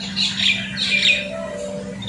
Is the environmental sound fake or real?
real